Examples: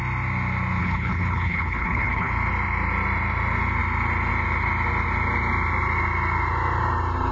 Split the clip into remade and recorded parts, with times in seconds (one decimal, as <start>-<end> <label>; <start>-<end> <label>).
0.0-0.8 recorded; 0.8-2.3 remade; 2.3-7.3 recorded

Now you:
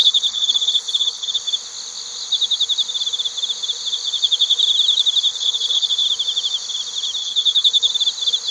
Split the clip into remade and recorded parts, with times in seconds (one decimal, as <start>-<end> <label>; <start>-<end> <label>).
0.0-1.4 remade; 1.4-5.3 recorded; 5.3-5.9 remade; 5.9-7.2 recorded; 7.2-7.9 remade; 7.9-8.5 recorded

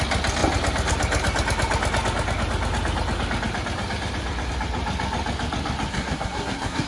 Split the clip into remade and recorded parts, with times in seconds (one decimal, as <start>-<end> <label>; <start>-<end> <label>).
0.0-5.9 recorded; 5.9-6.9 remade

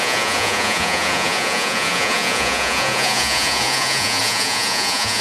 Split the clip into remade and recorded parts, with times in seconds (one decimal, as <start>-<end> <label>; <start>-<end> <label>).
0.0-5.2 remade

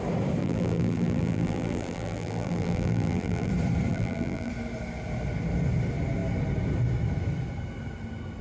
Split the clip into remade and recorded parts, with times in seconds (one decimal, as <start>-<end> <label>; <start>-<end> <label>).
0.0-0.4 recorded; 0.4-3.5 remade; 3.5-3.9 recorded; 3.9-4.5 remade; 4.5-8.4 recorded